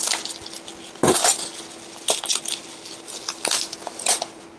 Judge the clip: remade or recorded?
recorded